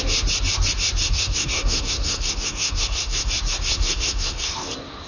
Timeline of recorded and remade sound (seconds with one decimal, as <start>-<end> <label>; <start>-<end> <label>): 0.0-1.1 recorded; 1.1-3.3 remade; 3.3-3.7 recorded; 3.7-4.5 remade; 4.5-5.1 recorded